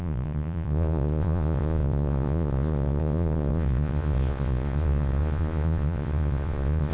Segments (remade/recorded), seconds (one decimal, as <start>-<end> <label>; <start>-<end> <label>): 0.0-6.9 remade